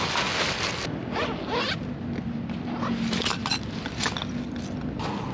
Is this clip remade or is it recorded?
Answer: recorded